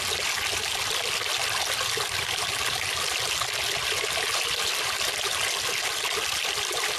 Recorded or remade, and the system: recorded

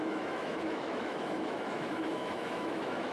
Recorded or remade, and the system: remade, autoencoder, DAC-VAE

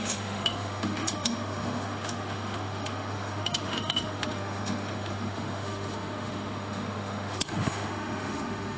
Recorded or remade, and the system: remade, autoencoder, DAC-VAE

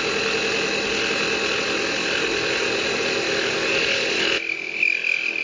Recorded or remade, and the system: recorded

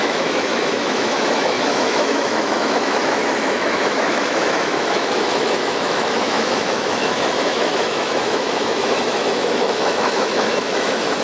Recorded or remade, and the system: remade, autoencoder, DAC-VAE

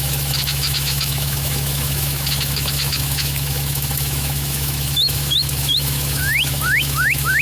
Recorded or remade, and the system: remade, autoencoder, DAC-VAE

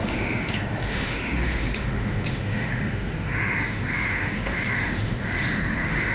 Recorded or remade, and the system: remade, autoencoder, DAC-VAE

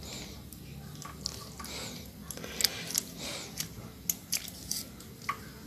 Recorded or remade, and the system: recorded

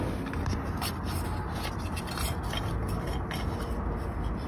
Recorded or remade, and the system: recorded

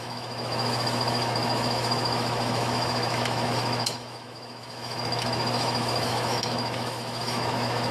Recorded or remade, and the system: remade, autoencoder, DAC-VAE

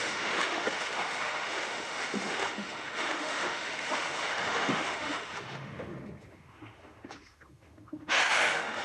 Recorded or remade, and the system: remade, autoencoder, DAC-VAE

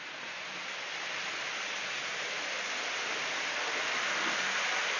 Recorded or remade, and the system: recorded